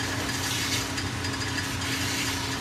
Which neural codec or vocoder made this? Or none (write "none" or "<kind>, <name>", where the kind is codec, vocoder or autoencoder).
none